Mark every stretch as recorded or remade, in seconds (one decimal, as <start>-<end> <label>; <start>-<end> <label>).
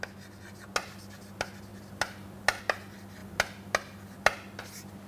0.0-5.1 recorded